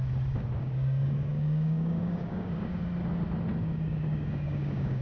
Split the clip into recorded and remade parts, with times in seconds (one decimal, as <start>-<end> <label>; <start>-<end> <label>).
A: 0.0-0.6 recorded; 0.6-2.8 remade; 2.8-3.6 recorded; 3.6-5.0 remade